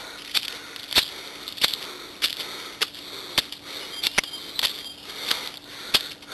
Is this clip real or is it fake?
real